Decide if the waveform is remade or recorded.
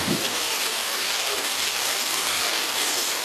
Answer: remade